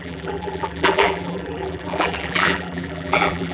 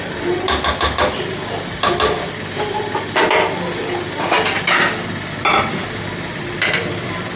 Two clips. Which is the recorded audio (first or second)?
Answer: second